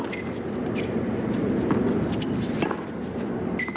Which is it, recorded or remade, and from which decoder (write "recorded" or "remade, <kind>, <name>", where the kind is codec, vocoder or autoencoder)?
recorded